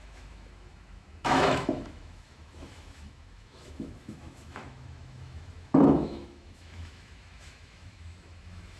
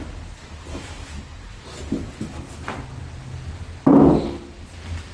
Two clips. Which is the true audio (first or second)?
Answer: second